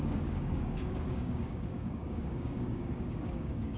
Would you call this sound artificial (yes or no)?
yes